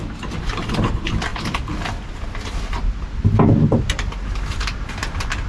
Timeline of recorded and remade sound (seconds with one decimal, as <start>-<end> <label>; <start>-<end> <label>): 0.0-5.5 recorded